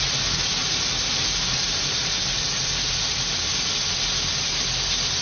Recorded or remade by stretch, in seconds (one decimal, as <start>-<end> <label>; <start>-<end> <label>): 0.0-0.6 recorded; 0.6-3.7 remade; 3.7-5.2 recorded